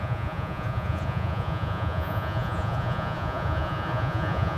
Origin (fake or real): fake